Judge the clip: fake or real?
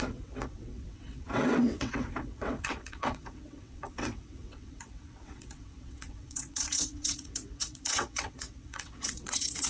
fake